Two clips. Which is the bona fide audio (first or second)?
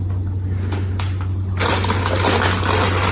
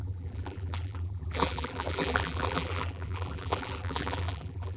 first